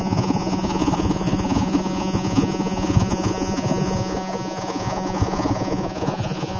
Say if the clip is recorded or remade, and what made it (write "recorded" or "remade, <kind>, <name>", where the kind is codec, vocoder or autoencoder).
remade, vocoder, Vocos